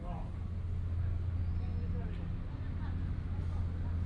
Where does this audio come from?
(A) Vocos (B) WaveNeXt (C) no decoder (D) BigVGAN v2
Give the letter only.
C